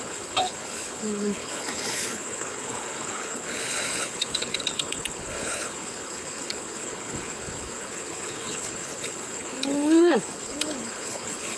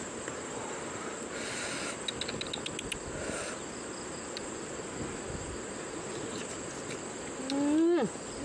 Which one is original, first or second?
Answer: second